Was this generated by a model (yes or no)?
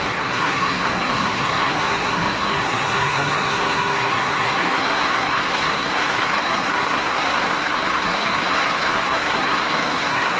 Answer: yes